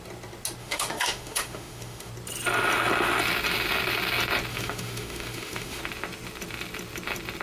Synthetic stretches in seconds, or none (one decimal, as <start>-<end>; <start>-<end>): 0.6-2.1; 4.5-5.8